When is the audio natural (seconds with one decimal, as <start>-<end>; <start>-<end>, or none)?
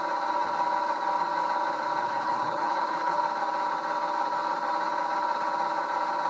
0.0-2.0; 3.2-6.3